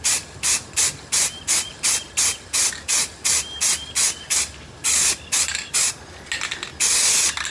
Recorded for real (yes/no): yes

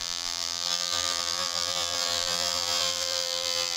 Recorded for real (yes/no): no